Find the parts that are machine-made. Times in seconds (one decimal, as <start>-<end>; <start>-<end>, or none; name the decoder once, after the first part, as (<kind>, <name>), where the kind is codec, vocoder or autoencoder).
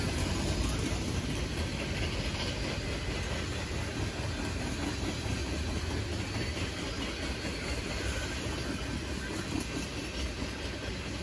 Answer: 7.6-8.3 (vocoder, BigVGAN v2)